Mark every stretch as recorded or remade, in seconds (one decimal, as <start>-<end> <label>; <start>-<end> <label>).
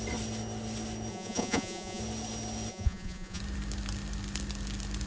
0.0-1.1 recorded; 1.1-2.0 remade; 2.0-2.7 recorded; 2.7-3.4 remade; 3.4-5.1 recorded